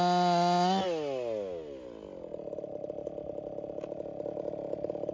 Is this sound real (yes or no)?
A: yes